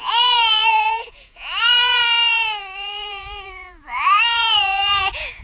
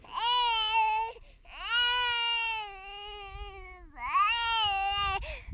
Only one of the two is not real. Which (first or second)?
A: first